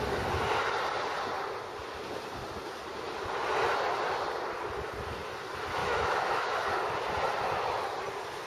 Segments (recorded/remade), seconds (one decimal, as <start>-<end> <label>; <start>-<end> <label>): 0.0-5.8 recorded; 5.8-6.5 remade; 6.5-8.5 recorded